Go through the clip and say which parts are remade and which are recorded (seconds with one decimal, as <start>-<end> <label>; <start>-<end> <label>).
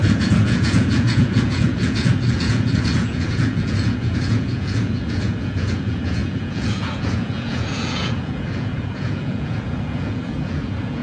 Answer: 0.0-11.0 remade